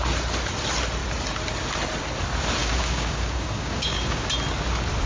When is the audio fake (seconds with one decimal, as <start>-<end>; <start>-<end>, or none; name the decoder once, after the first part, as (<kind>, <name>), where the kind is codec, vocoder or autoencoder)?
2.6-4.3 (codec, DAC)